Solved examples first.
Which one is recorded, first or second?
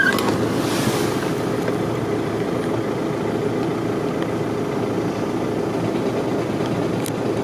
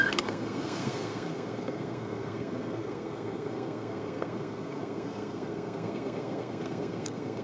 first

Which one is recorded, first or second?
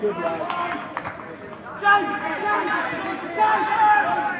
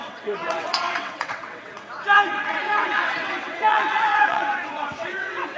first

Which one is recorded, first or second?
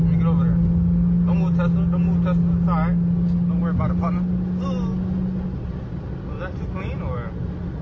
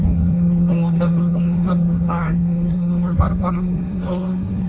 first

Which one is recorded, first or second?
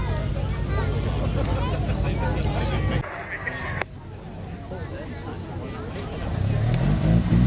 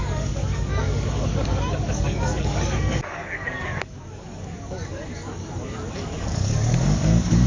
first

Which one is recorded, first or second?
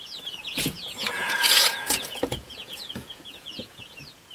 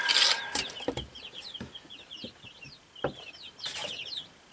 second